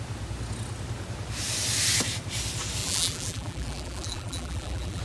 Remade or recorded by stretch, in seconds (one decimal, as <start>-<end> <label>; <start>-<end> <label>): 0.0-2.8 recorded; 2.8-5.0 remade